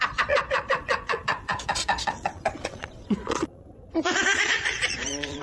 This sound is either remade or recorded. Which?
remade